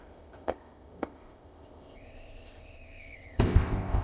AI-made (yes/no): yes